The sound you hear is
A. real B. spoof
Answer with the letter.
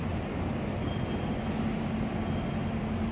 A